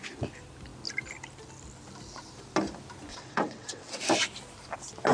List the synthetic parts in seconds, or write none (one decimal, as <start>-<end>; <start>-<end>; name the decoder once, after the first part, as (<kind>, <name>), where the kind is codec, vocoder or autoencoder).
3.1-4.0 (vocoder, WaveNeXt)